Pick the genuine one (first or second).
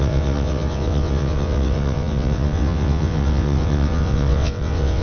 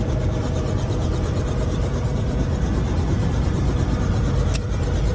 second